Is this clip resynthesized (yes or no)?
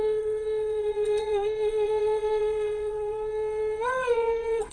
yes